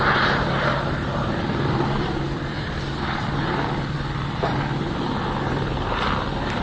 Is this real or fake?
fake